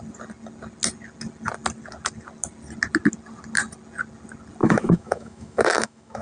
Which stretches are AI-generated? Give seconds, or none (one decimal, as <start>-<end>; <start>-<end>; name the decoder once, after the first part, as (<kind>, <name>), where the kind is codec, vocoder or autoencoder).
4.6-6.2 (autoencoder, DAC-VAE)